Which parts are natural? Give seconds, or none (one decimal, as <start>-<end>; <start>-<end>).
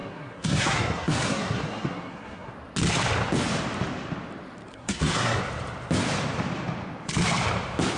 2.5-4.7; 5.4-8.0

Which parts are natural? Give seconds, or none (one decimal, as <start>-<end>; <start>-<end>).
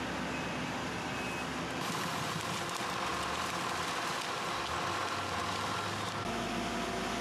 0.0-7.2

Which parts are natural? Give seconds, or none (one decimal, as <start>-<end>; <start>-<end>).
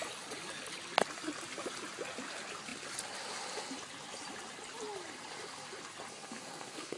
0.0-6.1